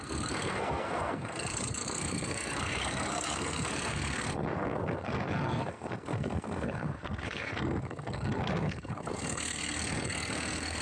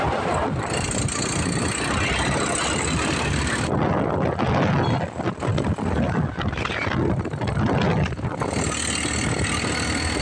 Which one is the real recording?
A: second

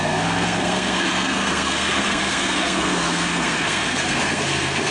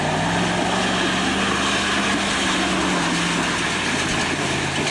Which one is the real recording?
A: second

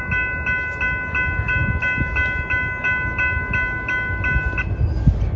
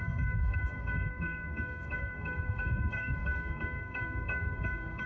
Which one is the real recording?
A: first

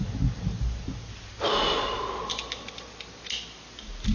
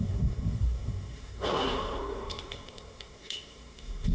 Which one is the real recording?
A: first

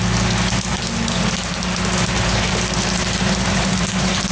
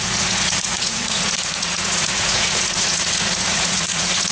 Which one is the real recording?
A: first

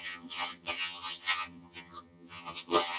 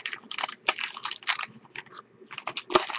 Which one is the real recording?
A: second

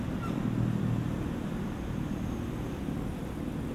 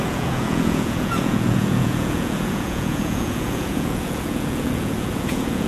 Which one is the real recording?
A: first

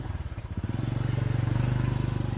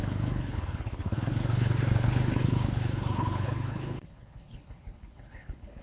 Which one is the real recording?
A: first